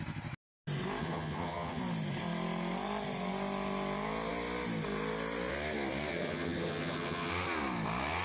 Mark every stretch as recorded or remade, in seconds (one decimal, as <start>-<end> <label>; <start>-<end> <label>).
0.0-1.0 recorded; 1.0-1.8 remade; 1.8-6.1 recorded; 6.1-7.3 remade; 7.3-8.2 recorded